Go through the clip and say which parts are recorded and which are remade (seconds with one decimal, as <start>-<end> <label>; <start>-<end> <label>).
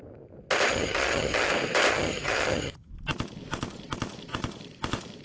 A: 0.0-0.7 recorded; 0.7-1.5 remade; 1.5-1.9 recorded; 1.9-2.9 remade; 2.9-5.2 recorded